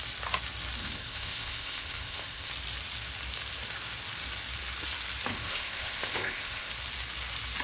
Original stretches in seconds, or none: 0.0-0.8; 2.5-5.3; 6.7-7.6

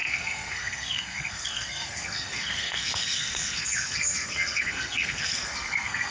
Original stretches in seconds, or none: none

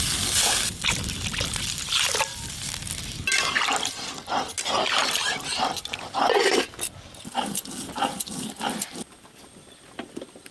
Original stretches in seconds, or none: 0.0-10.5

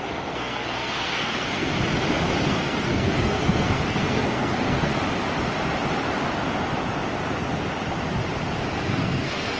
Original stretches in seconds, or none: 1.7-2.5; 4.9-8.8

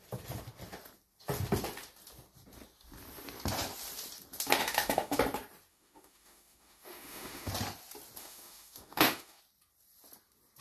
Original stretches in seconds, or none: 0.0-4.6; 5.2-5.7; 7.5-8.2; 9.4-10.6